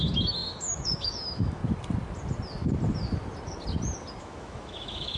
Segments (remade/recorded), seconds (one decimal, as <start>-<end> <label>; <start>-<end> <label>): 0.0-1.6 remade; 1.6-4.2 recorded; 4.2-5.2 remade